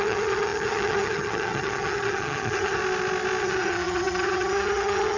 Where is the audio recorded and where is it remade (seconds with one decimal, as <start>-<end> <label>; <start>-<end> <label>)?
0.0-2.8 remade; 2.8-3.4 recorded; 3.4-5.2 remade